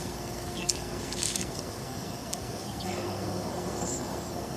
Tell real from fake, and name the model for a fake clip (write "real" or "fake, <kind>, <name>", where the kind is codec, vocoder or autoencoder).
fake, codec, SNAC